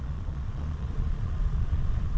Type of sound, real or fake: fake